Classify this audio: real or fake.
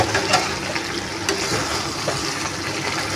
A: real